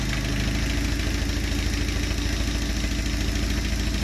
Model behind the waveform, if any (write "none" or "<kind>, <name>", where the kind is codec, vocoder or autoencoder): none